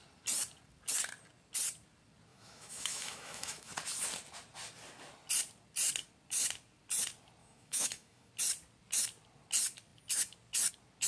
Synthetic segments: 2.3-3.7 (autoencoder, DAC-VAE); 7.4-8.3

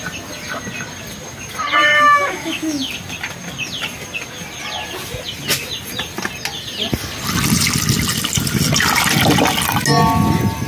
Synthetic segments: 1.8-2.9 (autoencoder, DAC-VAE)

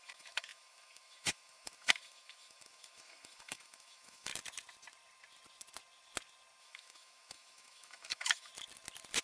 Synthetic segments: 0.0-4.3 (autoencoder, DAC-VAE); 6.6-8.5

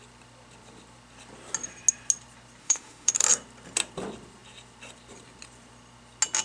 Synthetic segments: 2.6-3.1 (autoencoder, DAC-VAE)

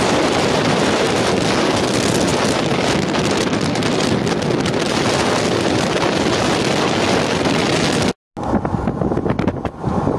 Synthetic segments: none